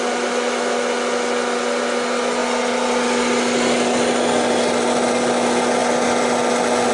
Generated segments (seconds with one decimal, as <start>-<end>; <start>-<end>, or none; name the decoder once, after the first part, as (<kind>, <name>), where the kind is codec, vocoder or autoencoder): none